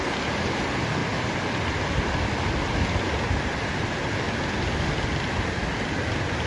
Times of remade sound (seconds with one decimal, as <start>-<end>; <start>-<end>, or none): none